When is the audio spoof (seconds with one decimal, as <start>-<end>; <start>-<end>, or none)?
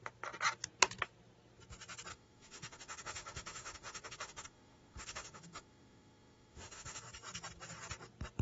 2.1-7.0